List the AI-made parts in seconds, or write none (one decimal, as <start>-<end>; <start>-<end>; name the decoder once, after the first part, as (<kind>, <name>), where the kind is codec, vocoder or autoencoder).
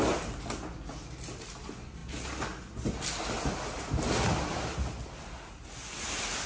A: none